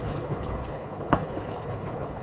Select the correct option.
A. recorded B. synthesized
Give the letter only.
B